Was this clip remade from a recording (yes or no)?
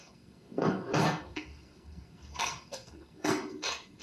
yes